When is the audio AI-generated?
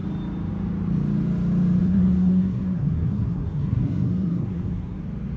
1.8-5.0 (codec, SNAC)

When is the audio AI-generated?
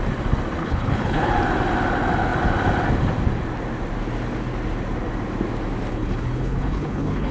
0.6-1.3 (codec, HILCodec); 5.9-7.3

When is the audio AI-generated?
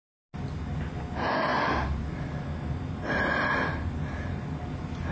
none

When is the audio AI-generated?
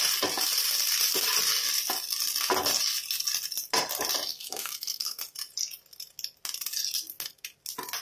4.3-5.2 (codec, SNAC)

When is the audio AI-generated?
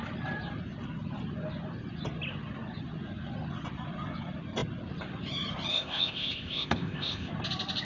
5.7-7.3 (codec, ZipCodec)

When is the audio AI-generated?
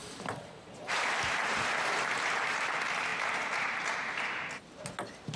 0.0-2.7 (vocoder, BigVGAN v2); 3.1-4.5